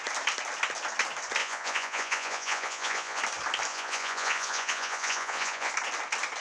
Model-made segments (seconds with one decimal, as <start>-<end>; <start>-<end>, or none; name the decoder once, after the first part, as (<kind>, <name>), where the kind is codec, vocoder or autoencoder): 1.4-3.2 (vocoder, Vocos); 3.7-5.7